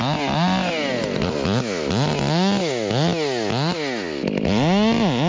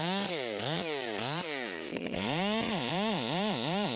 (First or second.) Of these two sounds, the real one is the first